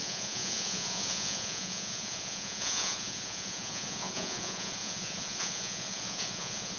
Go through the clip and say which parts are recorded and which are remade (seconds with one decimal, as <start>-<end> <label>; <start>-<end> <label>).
0.0-6.8 remade